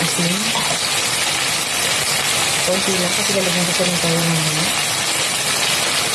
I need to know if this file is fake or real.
real